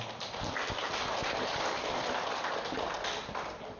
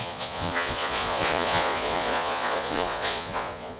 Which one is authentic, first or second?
first